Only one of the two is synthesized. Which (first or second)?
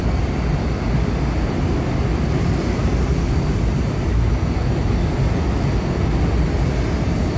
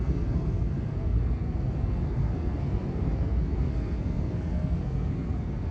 second